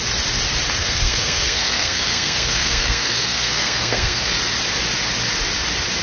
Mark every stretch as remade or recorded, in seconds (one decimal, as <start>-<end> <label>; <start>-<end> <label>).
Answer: 0.0-0.8 recorded; 0.8-4.4 remade; 4.4-6.0 recorded